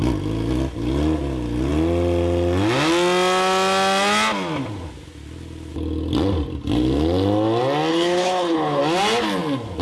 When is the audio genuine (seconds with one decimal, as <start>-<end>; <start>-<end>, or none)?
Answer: 0.0-7.9; 8.8-9.8